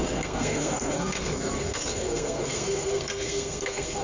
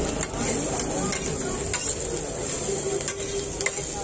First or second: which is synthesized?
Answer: first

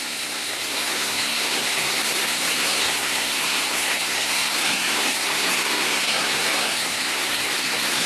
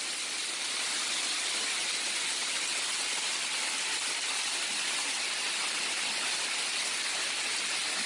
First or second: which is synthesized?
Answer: first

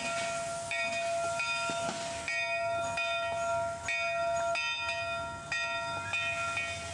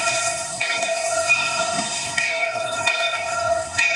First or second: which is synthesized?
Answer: second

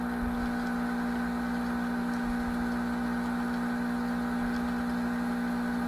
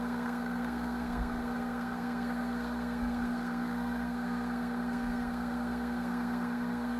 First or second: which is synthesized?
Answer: second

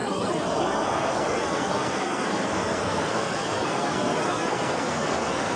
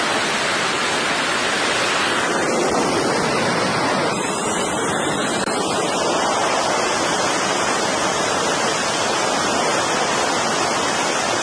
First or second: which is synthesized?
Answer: first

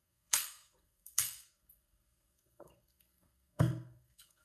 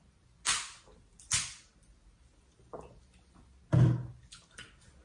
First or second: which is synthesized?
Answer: first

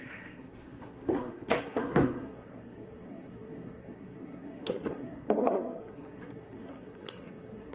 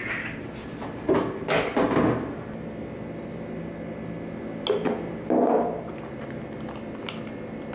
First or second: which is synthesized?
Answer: first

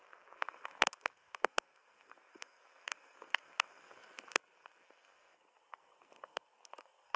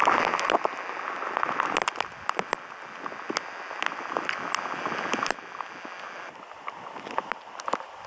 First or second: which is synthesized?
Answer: first